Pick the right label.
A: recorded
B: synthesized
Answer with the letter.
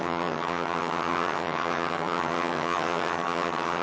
B